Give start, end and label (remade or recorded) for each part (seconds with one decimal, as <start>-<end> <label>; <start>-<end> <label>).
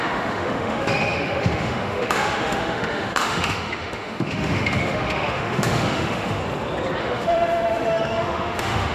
0.0-6.4 remade; 6.4-7.0 recorded; 7.0-8.9 remade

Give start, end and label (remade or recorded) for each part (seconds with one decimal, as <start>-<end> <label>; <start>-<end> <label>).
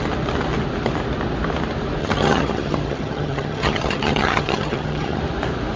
0.0-2.0 recorded; 2.0-5.2 remade; 5.2-5.8 recorded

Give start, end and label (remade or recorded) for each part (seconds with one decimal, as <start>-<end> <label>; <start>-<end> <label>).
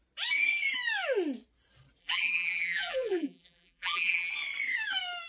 0.0-2.0 recorded; 2.0-4.3 remade; 4.3-5.3 recorded